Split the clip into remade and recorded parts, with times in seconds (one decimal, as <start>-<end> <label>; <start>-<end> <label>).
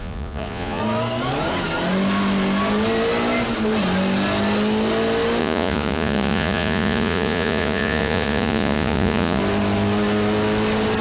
0.0-0.8 remade; 0.8-5.4 recorded; 5.4-9.4 remade; 9.4-11.0 recorded